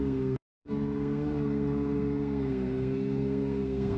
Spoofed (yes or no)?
yes